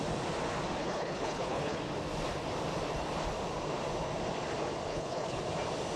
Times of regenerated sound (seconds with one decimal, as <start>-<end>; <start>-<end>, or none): 0.8-1.8; 4.9-5.4